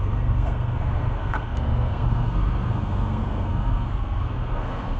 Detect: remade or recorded remade